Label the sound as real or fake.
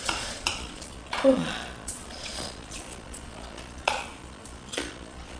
fake